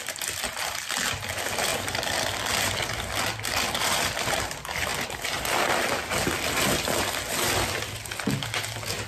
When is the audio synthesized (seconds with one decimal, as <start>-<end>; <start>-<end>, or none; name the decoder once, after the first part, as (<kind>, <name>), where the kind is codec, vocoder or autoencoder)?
none